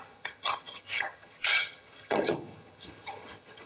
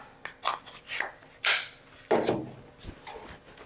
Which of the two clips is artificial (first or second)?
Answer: first